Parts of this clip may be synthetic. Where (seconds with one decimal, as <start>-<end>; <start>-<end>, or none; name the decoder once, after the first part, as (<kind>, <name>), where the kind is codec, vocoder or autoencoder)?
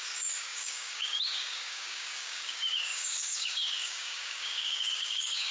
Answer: 0.0-5.5 (codec, DAC)